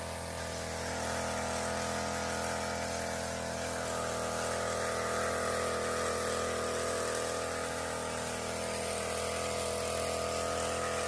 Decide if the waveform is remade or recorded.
recorded